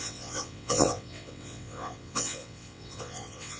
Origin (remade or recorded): remade